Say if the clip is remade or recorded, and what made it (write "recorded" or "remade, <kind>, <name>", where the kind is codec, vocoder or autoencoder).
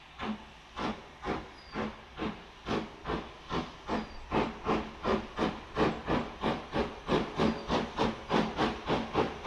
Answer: recorded